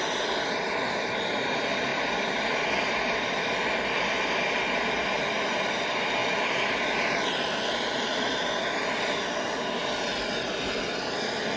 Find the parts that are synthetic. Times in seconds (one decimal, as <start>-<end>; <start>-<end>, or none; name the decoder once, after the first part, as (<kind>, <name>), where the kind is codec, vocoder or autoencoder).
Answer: none